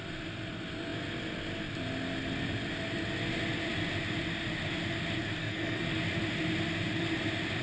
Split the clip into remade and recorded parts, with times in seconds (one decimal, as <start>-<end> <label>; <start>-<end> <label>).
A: 0.0-5.4 recorded; 5.4-6.0 remade; 6.0-7.6 recorded